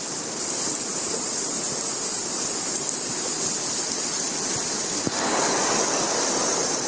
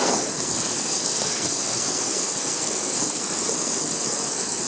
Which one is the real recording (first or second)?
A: first